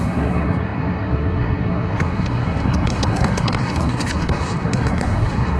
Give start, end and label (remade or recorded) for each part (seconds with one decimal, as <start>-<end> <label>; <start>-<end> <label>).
0.0-5.6 remade